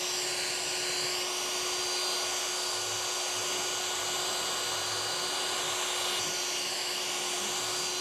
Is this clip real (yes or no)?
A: yes